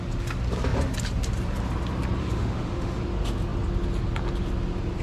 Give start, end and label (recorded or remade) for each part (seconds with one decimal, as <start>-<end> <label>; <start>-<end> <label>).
0.0-2.2 recorded; 2.2-3.0 remade; 3.0-5.0 recorded